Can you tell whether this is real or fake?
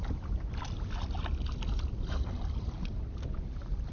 real